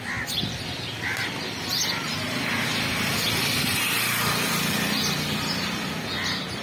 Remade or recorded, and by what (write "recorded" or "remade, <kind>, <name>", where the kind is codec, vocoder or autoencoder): recorded